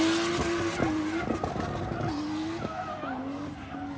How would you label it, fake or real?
real